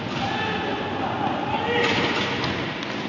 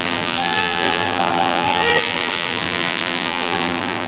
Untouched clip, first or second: first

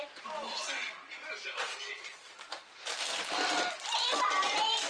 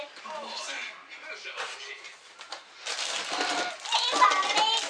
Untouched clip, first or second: second